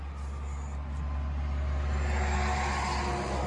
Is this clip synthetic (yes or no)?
no